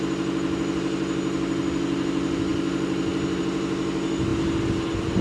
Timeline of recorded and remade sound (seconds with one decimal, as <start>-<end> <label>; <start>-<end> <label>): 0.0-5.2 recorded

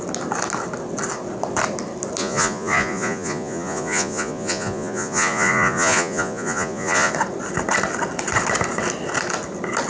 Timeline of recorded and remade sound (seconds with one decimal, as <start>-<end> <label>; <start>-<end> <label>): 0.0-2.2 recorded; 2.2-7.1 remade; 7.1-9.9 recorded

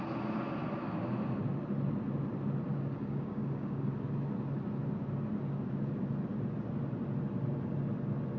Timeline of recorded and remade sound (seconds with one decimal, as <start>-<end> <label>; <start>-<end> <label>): 0.0-2.7 recorded; 2.7-3.9 remade; 3.9-8.4 recorded